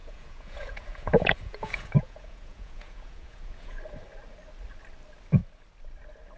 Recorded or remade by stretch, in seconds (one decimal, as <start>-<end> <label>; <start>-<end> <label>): 0.0-3.8 remade; 3.8-6.4 recorded

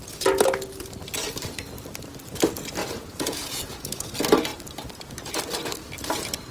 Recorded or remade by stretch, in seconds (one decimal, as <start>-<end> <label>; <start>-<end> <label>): 0.0-2.8 recorded; 2.8-4.1 remade; 4.1-6.5 recorded

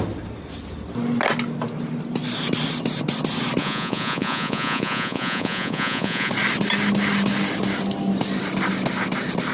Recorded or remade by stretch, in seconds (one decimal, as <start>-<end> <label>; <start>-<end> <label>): 0.0-3.6 recorded; 3.6-6.3 remade; 6.3-9.5 recorded